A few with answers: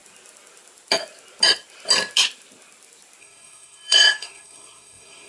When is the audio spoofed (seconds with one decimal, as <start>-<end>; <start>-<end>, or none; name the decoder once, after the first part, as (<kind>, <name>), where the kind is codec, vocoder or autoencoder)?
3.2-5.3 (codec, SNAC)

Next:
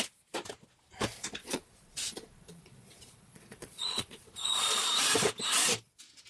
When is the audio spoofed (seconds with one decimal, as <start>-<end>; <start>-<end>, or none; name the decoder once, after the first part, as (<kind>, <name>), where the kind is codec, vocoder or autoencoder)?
1.4-4.8 (vocoder, Vocos)

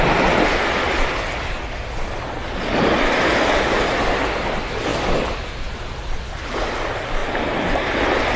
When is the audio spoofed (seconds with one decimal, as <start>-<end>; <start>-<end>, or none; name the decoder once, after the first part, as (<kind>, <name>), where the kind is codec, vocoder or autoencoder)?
none

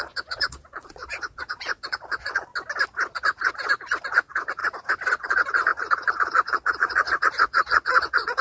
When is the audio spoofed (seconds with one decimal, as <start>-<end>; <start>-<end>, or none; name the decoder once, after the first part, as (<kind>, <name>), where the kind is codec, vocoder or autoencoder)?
0.0-2.5 (vocoder, Vocos); 3.4-4.6; 5.1-8.4

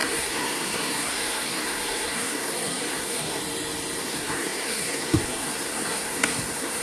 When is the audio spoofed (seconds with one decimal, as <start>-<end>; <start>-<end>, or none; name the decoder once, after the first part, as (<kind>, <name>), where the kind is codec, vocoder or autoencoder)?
0.0-3.4 (codec, SNAC); 4.0-6.8

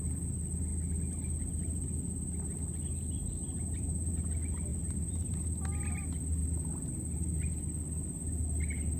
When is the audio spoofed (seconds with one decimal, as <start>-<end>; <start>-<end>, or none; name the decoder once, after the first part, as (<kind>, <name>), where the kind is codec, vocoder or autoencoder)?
4.7-5.4 (vocoder, BigVGAN v2)

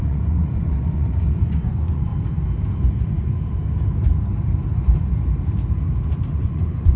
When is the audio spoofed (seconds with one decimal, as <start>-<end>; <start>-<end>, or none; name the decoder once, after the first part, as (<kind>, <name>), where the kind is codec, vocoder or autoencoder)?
0.0-2.1 (vocoder, Vocos); 6.3-7.0